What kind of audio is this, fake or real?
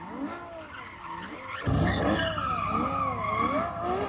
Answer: real